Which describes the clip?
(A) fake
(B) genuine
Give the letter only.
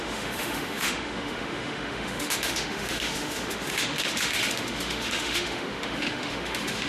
A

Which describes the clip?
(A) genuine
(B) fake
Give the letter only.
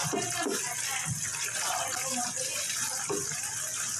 A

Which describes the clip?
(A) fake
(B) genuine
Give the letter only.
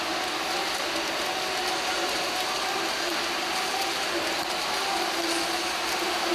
B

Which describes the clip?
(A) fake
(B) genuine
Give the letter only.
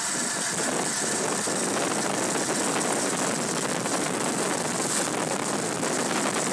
B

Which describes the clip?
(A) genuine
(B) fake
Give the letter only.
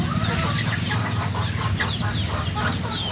A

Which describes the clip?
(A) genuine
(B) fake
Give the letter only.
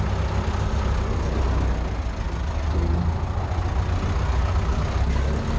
A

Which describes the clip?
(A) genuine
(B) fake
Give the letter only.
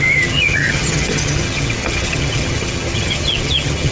B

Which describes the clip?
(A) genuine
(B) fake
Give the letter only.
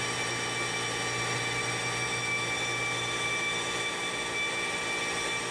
A